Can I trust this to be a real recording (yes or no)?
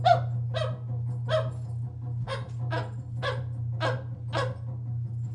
yes